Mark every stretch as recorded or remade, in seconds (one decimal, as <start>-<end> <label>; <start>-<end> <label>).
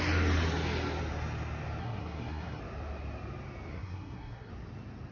0.0-1.8 recorded; 1.8-2.6 remade; 2.6-3.7 recorded; 3.7-4.5 remade; 4.5-5.1 recorded